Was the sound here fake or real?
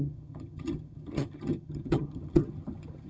fake